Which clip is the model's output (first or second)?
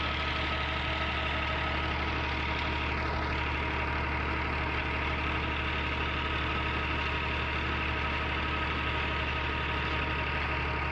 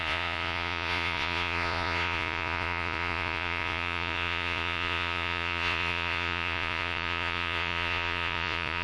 second